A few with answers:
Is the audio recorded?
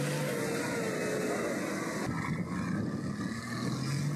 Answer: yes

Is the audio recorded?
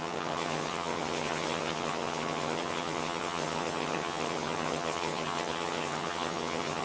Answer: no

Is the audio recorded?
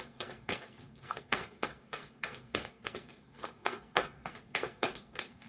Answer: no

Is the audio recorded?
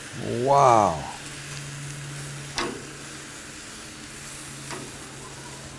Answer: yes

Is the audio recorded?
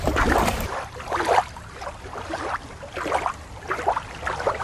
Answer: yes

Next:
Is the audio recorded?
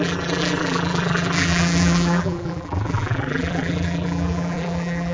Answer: no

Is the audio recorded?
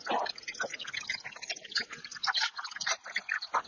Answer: yes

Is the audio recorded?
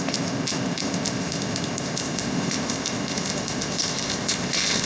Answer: no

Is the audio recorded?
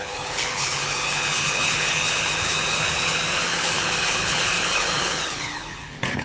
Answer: no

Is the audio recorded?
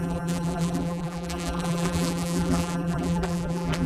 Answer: no